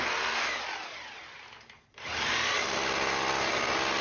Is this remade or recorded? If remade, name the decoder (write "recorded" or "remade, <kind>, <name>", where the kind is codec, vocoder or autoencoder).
recorded